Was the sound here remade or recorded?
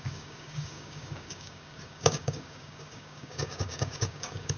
remade